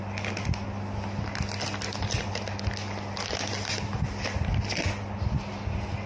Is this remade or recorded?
recorded